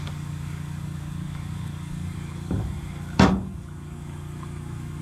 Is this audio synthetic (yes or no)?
yes